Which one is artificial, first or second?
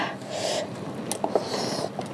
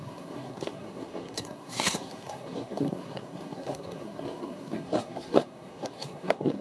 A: second